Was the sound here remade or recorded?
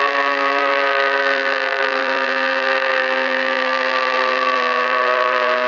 remade